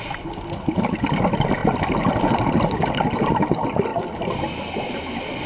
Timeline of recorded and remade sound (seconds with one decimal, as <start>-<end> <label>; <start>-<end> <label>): 0.0-5.5 recorded